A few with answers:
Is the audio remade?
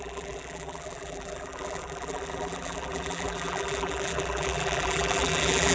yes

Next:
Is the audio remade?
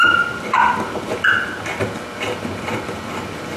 no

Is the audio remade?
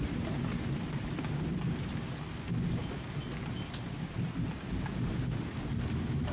no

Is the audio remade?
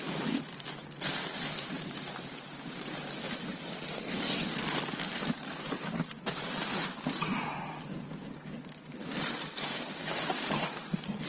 yes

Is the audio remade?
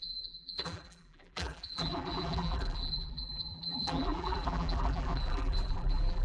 yes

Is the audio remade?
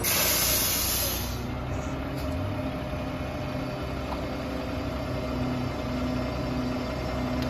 no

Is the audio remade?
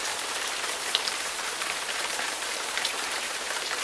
yes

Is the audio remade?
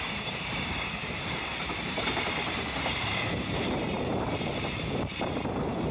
yes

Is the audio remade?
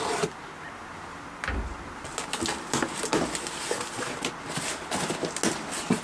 no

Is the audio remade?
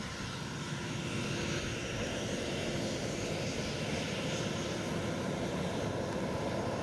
no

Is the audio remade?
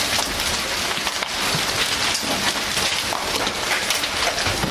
no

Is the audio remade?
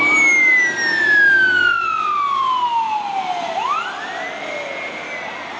no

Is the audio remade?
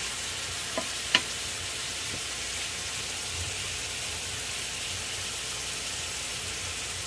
yes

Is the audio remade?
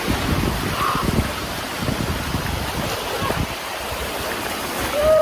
yes